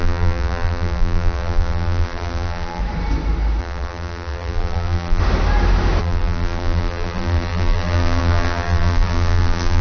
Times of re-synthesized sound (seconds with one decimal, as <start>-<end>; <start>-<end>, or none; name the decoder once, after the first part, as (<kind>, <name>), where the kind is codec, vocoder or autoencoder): 0.0-2.8 (vocoder, BigVGAN v2); 3.6-5.2; 6.0-9.8